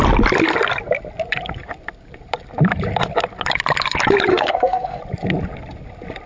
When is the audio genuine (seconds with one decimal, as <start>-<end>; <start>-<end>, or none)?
0.0-4.3; 5.0-6.3